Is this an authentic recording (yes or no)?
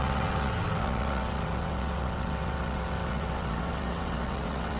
no